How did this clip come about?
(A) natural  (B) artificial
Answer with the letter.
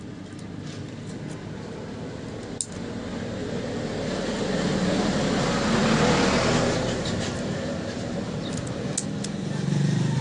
A